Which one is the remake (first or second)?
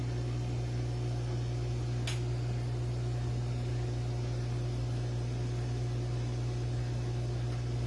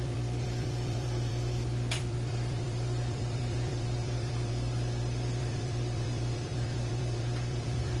second